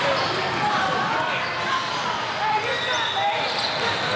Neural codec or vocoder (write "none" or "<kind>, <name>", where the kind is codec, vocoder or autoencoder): none